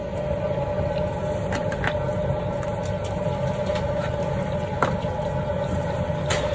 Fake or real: real